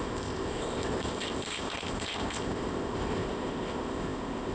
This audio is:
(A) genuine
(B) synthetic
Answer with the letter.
B